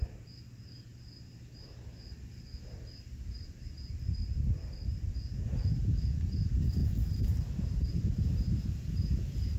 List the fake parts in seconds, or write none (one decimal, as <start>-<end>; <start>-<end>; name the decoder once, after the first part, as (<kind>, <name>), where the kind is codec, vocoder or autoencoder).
none